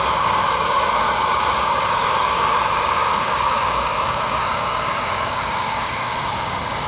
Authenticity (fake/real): fake